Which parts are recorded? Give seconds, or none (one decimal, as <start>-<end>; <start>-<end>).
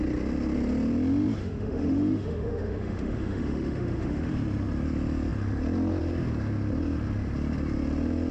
0.0-1.4; 4.3-8.3